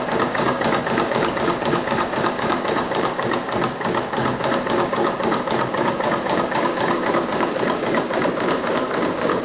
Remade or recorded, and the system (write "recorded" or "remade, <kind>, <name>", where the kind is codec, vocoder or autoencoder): remade, codec, DAC